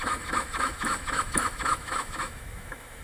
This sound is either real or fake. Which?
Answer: fake